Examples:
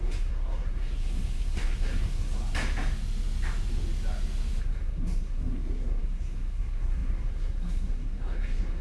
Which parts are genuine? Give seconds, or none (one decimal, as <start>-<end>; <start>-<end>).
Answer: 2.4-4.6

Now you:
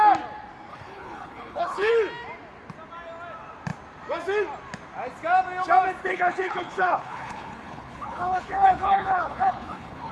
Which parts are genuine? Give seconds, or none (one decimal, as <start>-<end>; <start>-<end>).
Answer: 0.0-0.7; 1.9-6.0

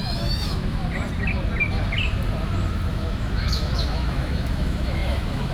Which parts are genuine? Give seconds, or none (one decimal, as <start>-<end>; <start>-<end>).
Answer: 0.8-2.9

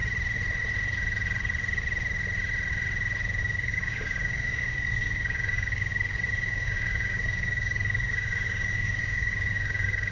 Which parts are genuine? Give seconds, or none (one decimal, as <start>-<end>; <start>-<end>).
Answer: 0.0-3.4

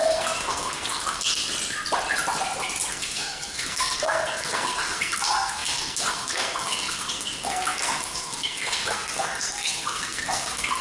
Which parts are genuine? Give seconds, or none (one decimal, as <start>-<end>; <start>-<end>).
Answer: 1.4-2.9

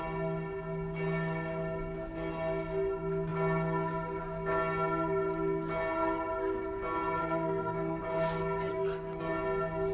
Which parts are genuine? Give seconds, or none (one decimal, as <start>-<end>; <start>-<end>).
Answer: 0.0-7.2; 8.0-8.7; 9.2-9.9

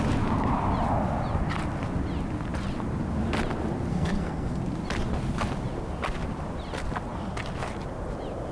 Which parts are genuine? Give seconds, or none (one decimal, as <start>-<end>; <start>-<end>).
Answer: 0.0-3.9; 4.6-8.5